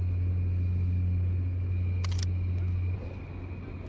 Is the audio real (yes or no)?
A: yes